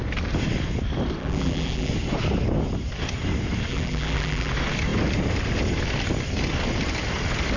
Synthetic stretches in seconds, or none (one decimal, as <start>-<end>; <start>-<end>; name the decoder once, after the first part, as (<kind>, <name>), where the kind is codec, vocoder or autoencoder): 1.2-1.9 (vocoder, BigVGAN v2); 3.7-4.5